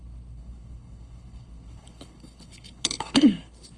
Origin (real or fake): fake